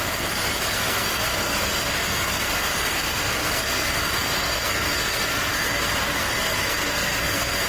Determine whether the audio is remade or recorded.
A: remade